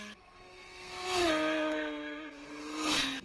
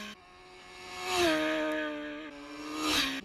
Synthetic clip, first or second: first